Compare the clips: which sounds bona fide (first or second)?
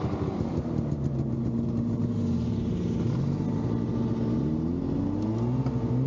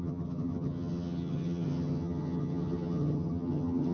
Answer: first